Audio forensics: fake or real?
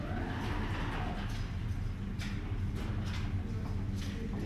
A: real